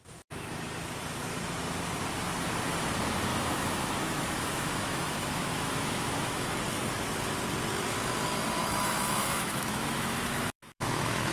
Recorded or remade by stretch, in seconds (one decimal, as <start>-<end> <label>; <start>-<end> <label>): 0.0-3.3 recorded; 3.3-6.5 remade; 6.5-8.6 recorded; 8.6-11.3 remade